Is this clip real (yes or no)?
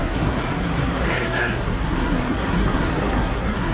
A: no